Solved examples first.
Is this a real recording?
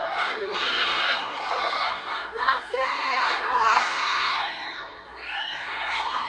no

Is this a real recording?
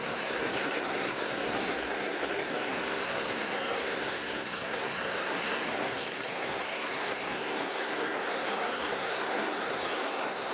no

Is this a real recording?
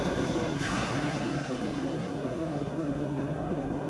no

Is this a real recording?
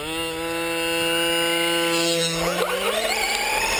yes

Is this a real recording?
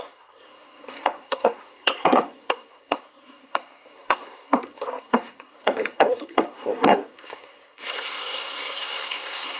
no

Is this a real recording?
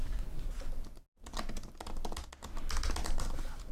yes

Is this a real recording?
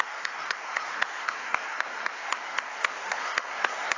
no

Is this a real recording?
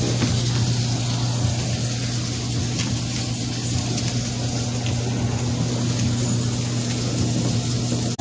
yes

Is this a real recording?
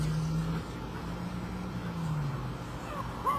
yes